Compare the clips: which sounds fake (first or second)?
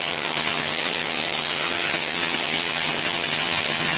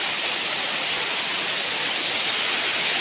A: first